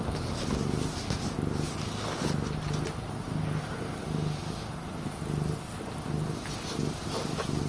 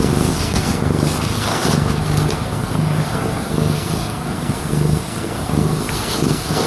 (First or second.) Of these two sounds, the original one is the first